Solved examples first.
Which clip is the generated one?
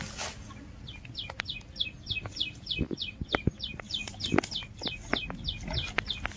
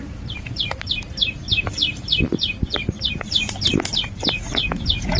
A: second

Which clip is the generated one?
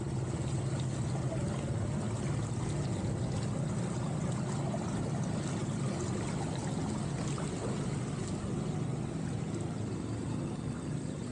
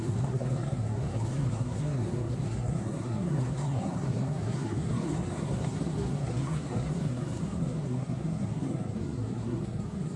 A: second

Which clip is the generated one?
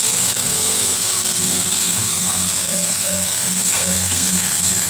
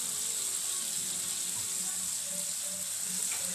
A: first